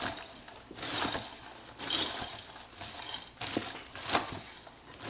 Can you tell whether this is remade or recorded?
recorded